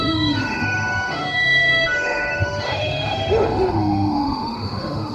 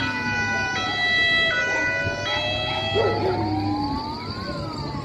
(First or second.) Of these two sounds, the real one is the second